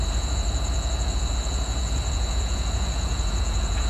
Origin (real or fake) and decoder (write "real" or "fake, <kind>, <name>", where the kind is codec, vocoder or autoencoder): fake, vocoder, Vocos